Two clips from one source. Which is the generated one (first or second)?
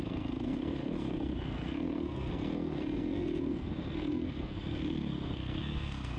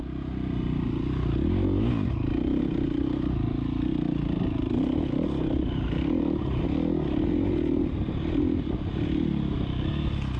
first